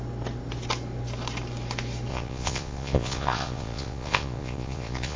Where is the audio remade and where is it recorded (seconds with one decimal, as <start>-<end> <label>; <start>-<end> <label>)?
0.0-2.1 recorded; 2.1-5.2 remade